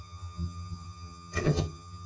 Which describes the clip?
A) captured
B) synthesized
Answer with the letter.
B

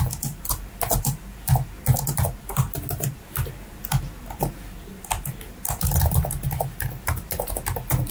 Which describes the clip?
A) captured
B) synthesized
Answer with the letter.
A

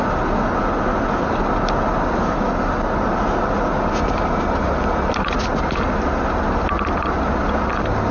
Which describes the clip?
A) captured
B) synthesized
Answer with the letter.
A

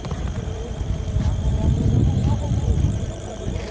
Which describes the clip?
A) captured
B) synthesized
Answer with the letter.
B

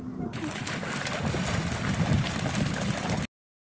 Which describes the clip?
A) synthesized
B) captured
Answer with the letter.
B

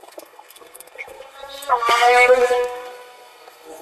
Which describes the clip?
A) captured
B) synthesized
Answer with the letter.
B